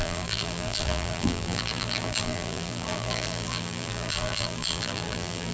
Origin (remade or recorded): remade